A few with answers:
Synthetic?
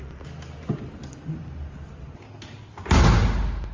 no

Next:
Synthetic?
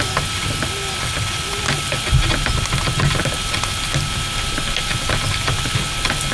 no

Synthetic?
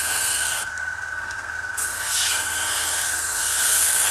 yes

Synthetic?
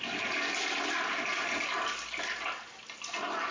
yes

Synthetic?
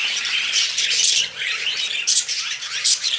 yes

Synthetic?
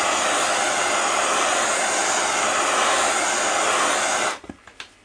no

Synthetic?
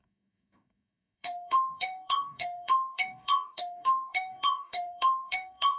yes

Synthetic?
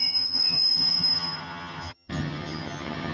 yes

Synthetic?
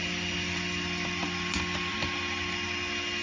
no